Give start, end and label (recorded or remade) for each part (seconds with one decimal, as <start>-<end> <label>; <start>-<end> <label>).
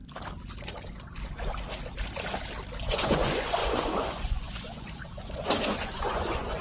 0.0-2.8 recorded; 2.8-6.6 remade